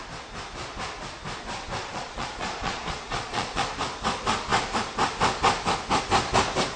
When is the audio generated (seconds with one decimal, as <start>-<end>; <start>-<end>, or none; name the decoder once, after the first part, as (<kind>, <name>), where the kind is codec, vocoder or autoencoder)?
1.8-3.6 (vocoder, Vocos)